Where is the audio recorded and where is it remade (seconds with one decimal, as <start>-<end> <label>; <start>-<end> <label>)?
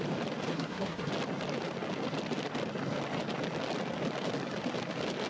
0.0-0.5 recorded; 0.5-1.1 remade; 1.1-5.3 recorded